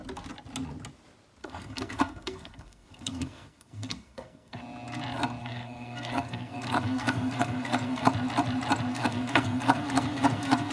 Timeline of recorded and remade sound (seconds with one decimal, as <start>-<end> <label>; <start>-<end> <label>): 0.0-1.4 recorded; 1.4-4.6 remade; 4.6-5.4 recorded; 5.4-8.1 remade; 8.1-8.9 recorded; 8.9-10.7 remade